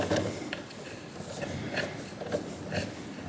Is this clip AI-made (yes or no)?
no